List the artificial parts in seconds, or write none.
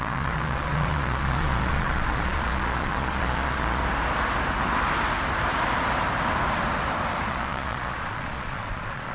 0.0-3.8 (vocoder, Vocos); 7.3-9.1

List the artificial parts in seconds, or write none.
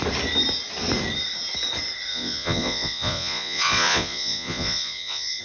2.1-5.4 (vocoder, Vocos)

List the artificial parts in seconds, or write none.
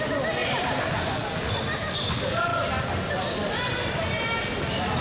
none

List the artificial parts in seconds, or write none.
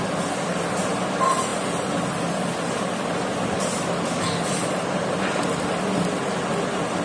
none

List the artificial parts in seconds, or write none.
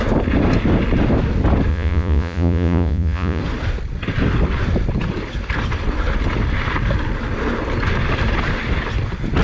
1.7-3.4 (vocoder, Vocos)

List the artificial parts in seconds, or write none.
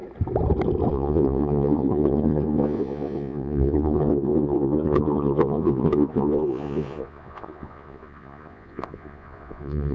0.9-9.9 (vocoder, Vocos)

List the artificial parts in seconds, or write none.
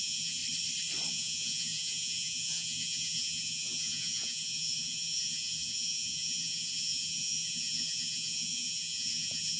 0.0-0.4 (vocoder, Vocos); 1.1-9.6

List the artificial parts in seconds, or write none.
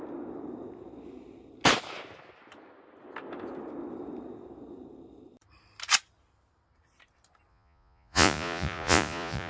7.5-9.5 (vocoder, Vocos)